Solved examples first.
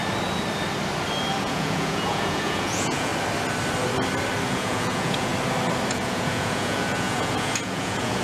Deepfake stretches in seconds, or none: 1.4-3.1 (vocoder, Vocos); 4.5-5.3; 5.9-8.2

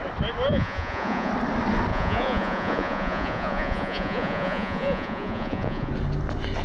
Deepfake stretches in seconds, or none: 0.5-1.3 (vocoder, Vocos); 1.9-5.9

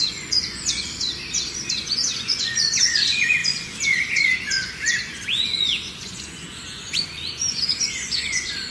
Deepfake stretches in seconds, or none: 0.0-1.1 (vocoder, Vocos); 1.8-8.7

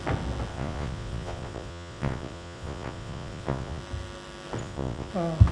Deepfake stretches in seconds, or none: 0.5-3.8 (vocoder, Vocos); 4.6-5.1

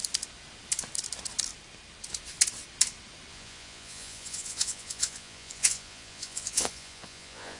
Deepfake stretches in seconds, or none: 3.3-7.6 (vocoder, Vocos)

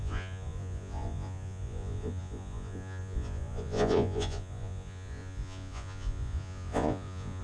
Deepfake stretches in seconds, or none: 0.0-7.4 (vocoder, Vocos)

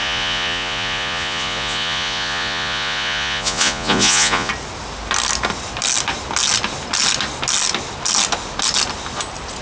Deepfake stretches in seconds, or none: 0.0-4.5 (vocoder, Vocos)

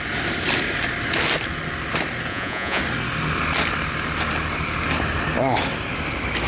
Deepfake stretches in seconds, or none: 2.3-2.8 (vocoder, Vocos)